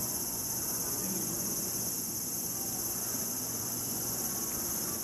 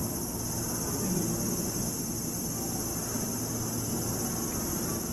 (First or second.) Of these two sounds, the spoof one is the first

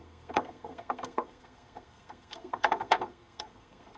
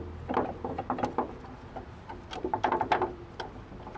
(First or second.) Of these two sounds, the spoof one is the first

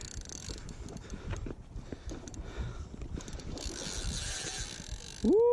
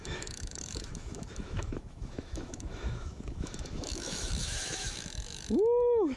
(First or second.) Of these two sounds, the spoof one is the second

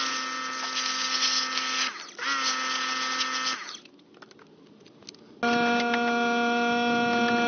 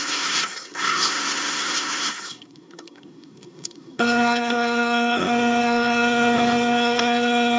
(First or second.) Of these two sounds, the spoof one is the second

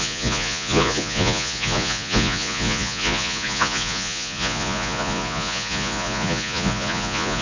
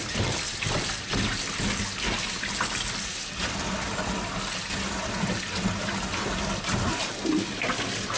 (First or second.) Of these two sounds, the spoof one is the first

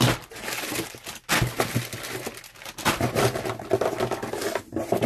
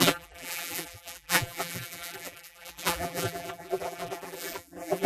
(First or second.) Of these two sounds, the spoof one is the second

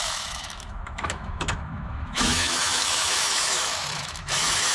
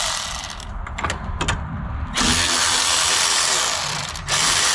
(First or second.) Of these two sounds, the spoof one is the first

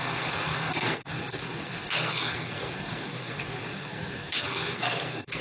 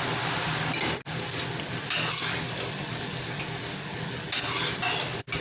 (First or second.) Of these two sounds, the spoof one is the first